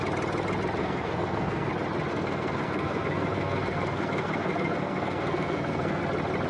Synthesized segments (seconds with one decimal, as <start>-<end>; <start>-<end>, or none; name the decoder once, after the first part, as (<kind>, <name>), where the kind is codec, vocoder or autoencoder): 0.8-1.7 (codec, SNAC); 2.1-6.0